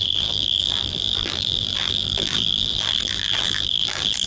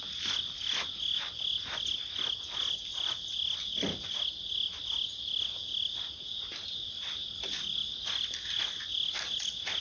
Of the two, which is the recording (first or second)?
second